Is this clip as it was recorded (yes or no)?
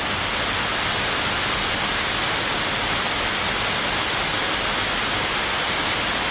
yes